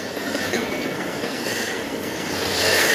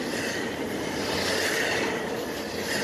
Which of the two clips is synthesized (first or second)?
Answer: first